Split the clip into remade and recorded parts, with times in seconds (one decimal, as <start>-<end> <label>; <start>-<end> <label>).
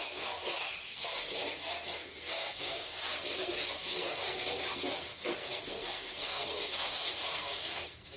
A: 0.0-8.2 remade